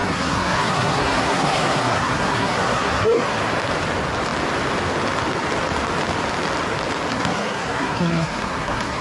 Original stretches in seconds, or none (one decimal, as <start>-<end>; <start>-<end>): 3.4-7.1